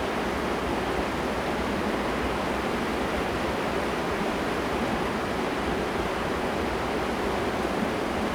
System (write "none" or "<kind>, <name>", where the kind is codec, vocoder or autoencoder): none